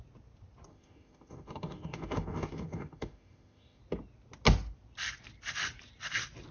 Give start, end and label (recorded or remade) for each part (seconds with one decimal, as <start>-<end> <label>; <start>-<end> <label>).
0.0-0.7 recorded; 0.7-3.8 remade; 3.8-6.5 recorded

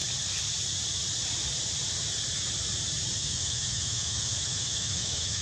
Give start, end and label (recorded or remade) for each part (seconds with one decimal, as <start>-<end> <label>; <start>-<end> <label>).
0.0-3.2 recorded; 3.2-5.4 remade